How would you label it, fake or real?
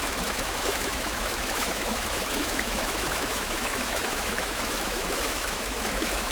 fake